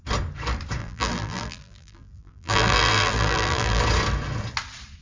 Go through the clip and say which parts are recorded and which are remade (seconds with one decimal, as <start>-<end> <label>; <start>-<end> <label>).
0.0-0.8 recorded; 0.8-3.8 remade; 3.8-5.0 recorded